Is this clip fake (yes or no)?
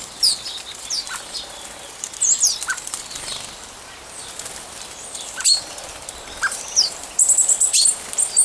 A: no